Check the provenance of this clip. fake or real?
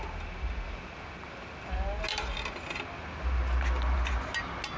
real